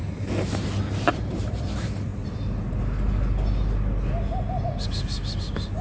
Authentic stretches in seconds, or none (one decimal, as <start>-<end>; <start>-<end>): 0.0-1.1; 2.1-5.8